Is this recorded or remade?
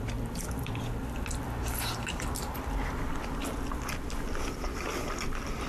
remade